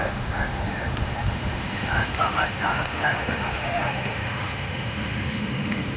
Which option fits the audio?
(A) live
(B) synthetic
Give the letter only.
B